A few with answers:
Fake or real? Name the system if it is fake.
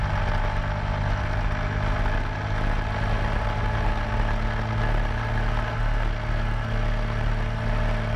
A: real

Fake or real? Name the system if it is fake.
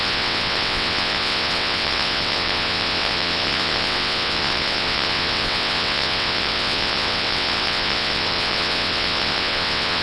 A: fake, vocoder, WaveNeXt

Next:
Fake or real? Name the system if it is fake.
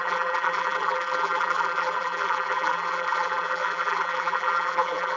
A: fake, vocoder, BigVGAN v2